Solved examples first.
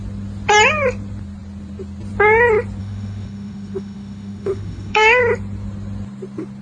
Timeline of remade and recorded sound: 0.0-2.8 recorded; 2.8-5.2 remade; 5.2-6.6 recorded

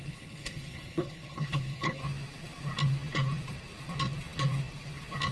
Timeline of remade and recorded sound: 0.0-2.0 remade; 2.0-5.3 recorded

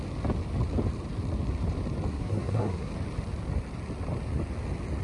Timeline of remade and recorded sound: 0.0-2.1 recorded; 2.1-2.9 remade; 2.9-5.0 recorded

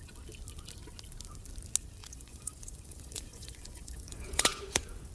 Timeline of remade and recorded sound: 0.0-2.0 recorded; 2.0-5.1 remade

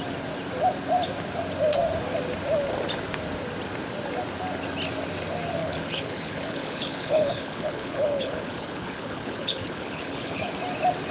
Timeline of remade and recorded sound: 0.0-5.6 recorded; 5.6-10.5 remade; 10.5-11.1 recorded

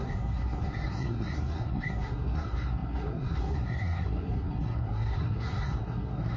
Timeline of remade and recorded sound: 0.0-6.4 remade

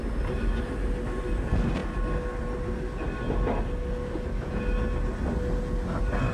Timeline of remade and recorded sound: 0.0-6.3 recorded